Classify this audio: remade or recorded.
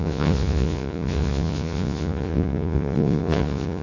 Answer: remade